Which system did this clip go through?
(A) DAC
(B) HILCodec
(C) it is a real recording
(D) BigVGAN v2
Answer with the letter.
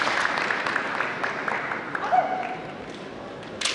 C